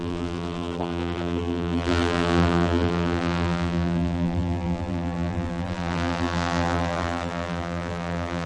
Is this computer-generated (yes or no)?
yes